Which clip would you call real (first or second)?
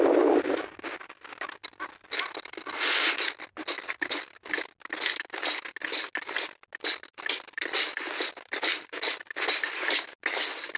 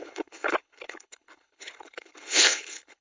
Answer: first